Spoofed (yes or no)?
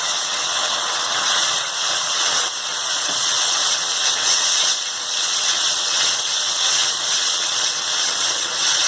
yes